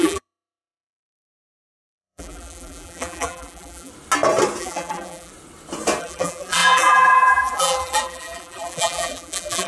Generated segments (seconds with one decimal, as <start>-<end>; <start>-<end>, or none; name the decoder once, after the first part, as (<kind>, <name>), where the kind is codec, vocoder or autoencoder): 0.0-3.9 (vocoder, BigVGAN v2); 4.6-5.3; 6.0-9.7